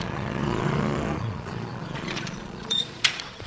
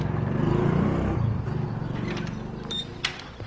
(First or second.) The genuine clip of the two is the second